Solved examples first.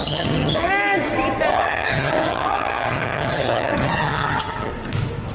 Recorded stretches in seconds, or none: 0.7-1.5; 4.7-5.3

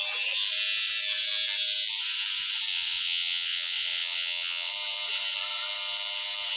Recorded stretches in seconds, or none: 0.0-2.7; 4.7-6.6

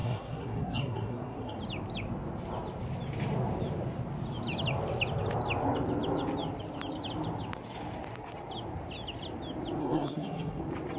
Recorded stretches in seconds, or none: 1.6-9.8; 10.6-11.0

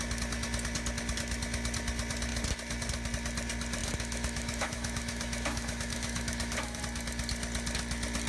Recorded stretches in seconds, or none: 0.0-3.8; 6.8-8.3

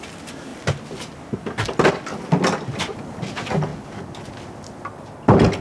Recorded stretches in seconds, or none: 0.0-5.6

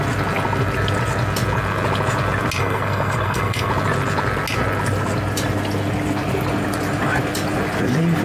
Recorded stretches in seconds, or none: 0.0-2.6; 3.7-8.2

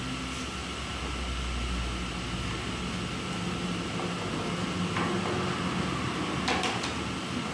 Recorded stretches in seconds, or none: 0.0-7.5